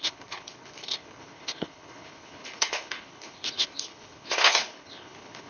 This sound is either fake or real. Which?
fake